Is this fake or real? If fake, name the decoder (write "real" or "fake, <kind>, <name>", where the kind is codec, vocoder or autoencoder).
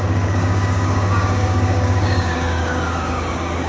fake, codec, DAC